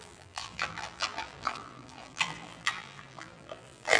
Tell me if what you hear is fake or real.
fake